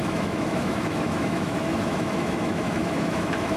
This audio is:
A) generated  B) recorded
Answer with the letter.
A